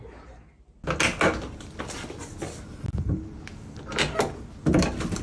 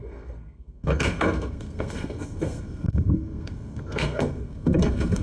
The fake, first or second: second